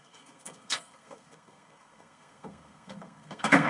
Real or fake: fake